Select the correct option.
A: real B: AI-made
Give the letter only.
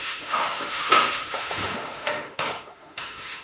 B